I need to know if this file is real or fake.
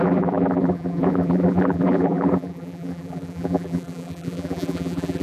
fake